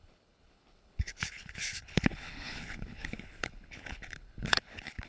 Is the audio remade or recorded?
remade